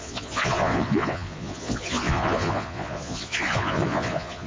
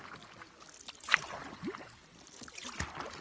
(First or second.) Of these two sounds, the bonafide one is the second